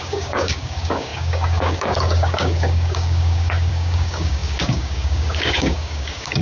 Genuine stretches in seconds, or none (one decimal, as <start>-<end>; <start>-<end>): none